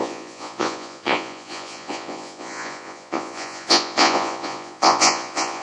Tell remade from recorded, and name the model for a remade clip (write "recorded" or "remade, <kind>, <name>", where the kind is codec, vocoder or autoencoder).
remade, vocoder, Vocos